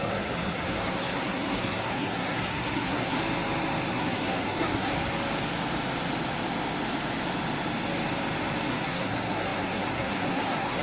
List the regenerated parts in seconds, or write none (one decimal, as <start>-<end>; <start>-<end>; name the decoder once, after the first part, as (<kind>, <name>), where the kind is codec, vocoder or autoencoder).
0.0-3.2 (codec, SNAC); 3.9-4.9; 8.7-10.8